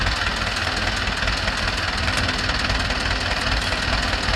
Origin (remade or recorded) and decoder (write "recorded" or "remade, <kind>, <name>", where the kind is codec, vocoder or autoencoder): recorded